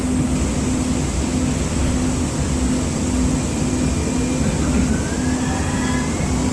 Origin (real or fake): real